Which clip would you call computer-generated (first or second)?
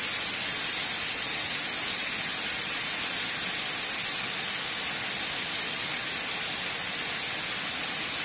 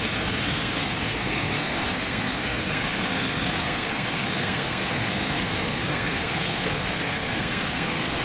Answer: second